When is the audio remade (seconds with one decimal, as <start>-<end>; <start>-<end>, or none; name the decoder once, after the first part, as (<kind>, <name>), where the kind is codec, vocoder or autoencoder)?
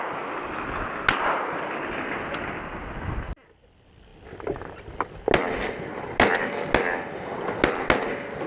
none